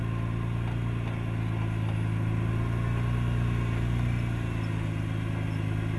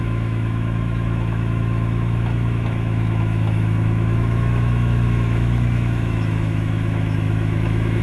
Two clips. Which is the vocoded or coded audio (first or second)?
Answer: second